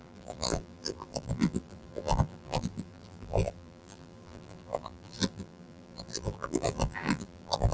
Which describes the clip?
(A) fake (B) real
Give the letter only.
A